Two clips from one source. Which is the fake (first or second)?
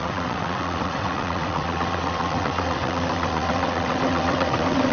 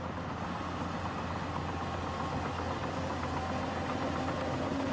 first